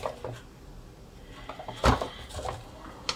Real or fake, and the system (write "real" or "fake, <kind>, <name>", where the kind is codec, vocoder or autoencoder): real